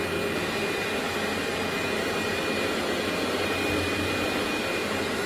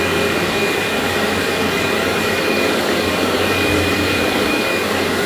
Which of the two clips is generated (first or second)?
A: second